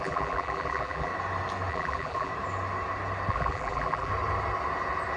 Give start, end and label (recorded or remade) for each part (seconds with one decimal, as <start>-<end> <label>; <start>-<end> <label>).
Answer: 0.0-1.1 remade; 1.1-1.7 recorded; 1.7-2.3 remade; 2.3-3.3 recorded; 3.3-4.1 remade; 4.1-5.2 recorded